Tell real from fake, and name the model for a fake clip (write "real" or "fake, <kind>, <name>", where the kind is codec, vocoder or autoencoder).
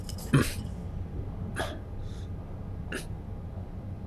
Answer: real